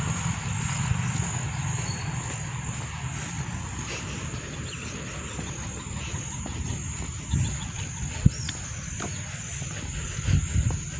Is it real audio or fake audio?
real